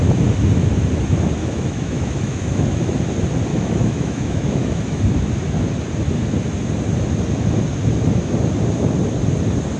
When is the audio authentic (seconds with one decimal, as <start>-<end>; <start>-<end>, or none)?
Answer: 0.0-1.4; 3.0-3.5; 5.0-9.8